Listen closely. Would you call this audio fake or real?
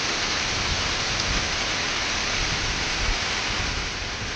real